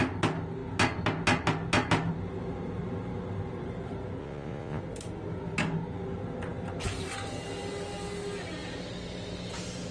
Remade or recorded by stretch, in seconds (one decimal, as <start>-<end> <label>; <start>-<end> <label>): 0.0-4.2 recorded; 4.2-4.8 remade; 4.8-9.9 recorded

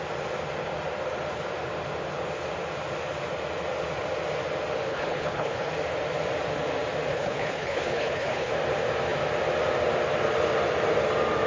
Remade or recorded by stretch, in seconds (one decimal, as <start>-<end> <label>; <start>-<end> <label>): 0.0-4.9 recorded; 4.9-5.7 remade; 5.7-7.1 recorded; 7.1-8.5 remade; 8.5-11.5 recorded

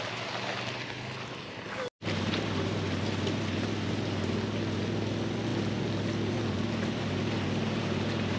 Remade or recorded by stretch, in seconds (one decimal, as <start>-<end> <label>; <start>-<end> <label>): 0.0-8.4 recorded

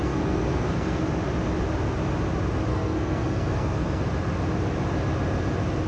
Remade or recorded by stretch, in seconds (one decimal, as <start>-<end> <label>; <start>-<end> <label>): 0.0-1.0 remade; 1.0-2.7 recorded; 2.7-4.0 remade; 4.0-5.9 recorded

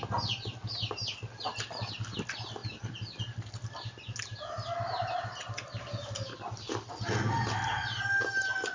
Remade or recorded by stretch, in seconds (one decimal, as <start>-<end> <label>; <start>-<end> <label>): 0.0-8.7 recorded

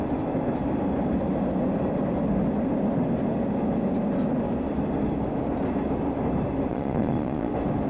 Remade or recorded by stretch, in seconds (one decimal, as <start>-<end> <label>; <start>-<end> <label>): 0.0-6.7 recorded; 6.7-7.5 remade; 7.5-7.9 recorded